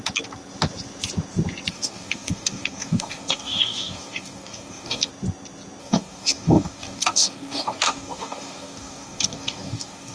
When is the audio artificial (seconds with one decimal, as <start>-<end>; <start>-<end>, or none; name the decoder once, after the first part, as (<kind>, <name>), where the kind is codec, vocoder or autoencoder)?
1.7-5.1 (codec, DAC); 5.8-10.1

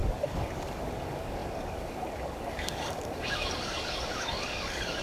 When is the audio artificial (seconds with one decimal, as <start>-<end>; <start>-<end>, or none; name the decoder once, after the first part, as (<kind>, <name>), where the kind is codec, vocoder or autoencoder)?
0.0-5.0 (codec, DAC)